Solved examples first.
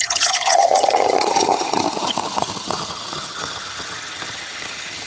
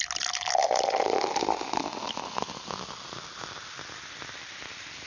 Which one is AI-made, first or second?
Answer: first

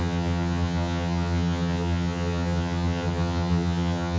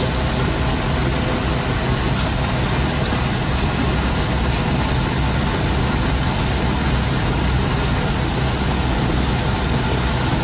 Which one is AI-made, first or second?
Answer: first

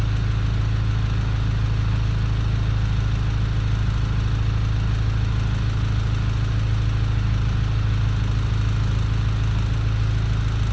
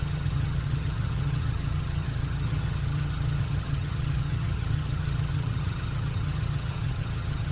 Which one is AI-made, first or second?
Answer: second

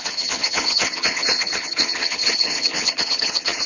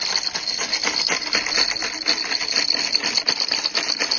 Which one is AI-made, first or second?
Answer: first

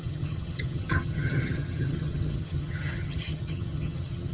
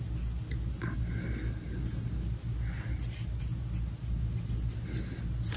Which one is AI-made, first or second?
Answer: first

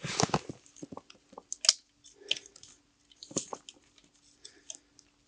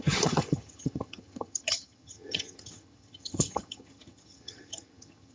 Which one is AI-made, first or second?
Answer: second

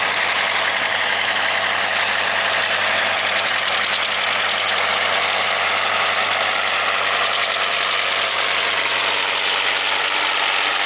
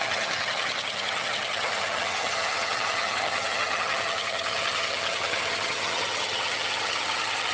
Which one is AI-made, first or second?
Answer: second